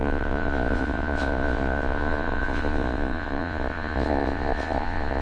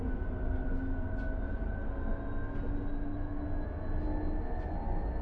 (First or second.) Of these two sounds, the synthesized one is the first